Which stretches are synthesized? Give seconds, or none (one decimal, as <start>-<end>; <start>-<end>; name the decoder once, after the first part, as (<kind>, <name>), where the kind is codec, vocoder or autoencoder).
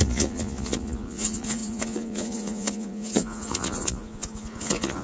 0.0-5.0 (vocoder, Vocos)